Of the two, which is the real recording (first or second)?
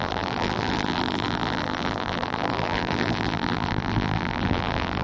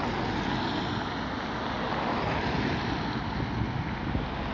second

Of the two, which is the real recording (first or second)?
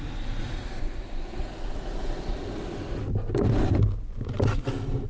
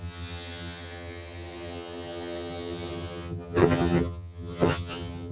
first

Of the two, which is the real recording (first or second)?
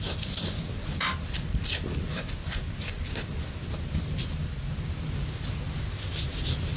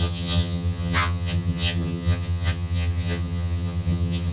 first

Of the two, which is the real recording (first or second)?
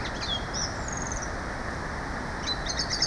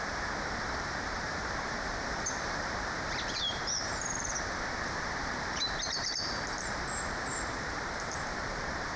first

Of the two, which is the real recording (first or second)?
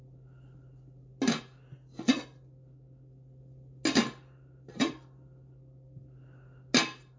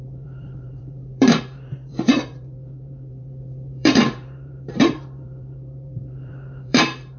first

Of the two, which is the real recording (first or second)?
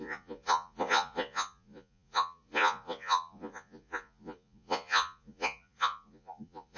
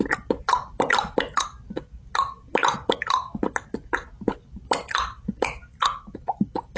second